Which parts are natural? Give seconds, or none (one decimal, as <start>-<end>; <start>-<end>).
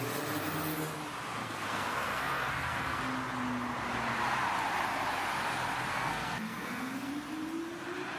0.0-1.4; 3.0-5.9; 7.1-8.2